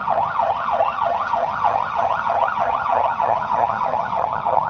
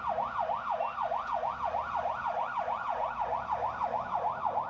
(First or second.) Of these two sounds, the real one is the second